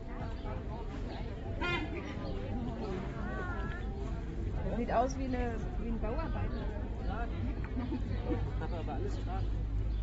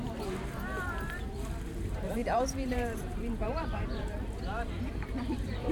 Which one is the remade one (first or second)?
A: second